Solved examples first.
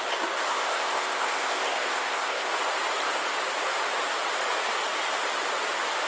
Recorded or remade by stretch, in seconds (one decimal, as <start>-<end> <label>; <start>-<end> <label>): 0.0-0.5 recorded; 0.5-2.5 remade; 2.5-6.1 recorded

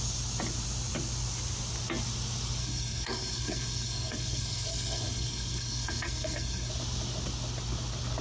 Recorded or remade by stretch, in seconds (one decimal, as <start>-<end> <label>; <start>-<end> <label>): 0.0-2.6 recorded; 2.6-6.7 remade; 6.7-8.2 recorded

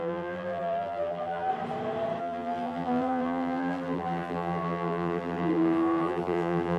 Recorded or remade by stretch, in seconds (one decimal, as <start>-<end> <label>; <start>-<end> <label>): 0.0-1.5 remade; 1.5-2.2 recorded; 2.2-6.8 remade

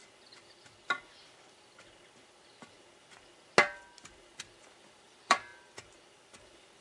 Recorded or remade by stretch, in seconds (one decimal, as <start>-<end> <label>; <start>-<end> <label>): 0.0-4.1 recorded; 4.1-6.8 remade

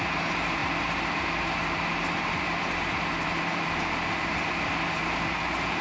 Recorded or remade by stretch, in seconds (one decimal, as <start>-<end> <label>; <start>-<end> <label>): 0.0-0.6 remade; 0.6-1.2 recorded; 1.2-5.8 remade

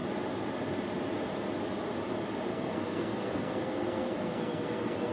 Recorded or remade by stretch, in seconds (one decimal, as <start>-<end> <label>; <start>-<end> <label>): 0.0-2.5 recorded; 2.5-5.1 remade